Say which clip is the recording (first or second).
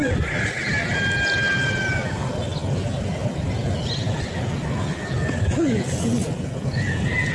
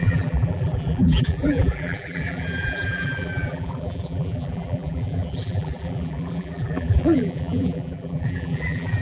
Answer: first